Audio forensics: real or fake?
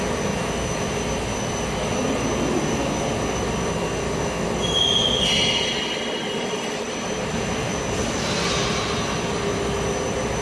real